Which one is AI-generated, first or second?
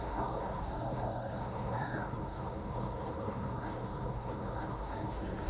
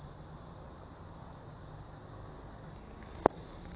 first